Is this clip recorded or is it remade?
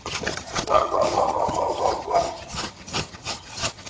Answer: remade